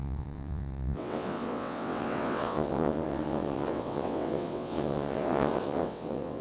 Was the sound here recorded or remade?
remade